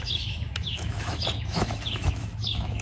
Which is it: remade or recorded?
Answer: remade